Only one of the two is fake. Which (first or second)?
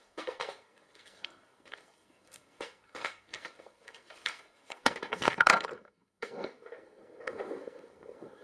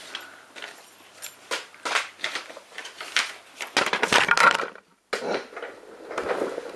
first